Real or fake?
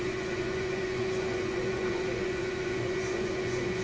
fake